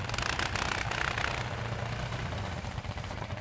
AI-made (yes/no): no